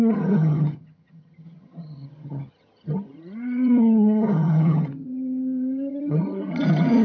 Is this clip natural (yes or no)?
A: no